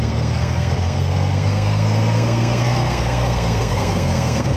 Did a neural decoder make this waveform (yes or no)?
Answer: yes